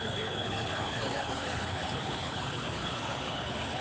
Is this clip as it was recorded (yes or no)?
no